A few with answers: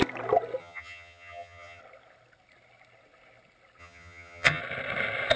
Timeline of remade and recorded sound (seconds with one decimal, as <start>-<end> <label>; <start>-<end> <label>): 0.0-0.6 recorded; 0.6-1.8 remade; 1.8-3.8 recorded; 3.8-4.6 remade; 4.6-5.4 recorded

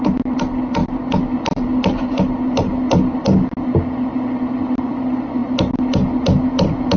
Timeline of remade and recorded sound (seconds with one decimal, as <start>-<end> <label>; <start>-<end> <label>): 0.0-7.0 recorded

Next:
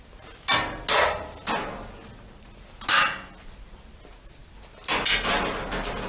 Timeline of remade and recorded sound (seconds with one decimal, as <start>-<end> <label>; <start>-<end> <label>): 0.0-6.1 recorded

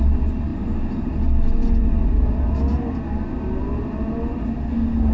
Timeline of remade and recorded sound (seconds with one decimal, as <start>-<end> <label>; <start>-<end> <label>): 0.0-5.1 recorded

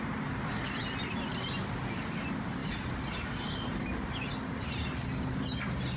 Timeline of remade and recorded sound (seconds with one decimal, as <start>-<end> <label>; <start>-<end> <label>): 0.0-6.0 recorded